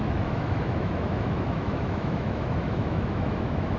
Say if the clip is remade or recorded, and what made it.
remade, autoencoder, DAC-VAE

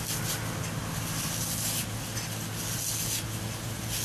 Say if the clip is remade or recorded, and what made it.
recorded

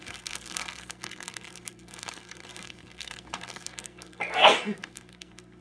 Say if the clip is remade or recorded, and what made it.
remade, codec, SNAC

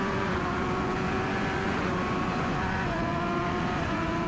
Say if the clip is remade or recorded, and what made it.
remade, vocoder, Vocos